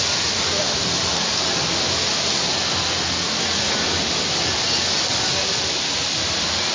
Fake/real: real